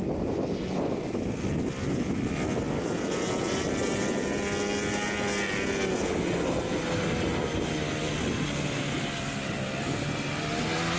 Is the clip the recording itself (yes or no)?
yes